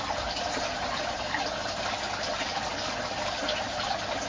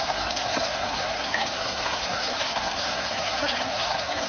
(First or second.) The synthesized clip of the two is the second